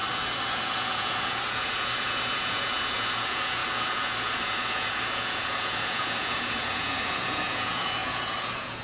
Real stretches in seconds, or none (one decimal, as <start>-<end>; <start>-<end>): 0.0-0.5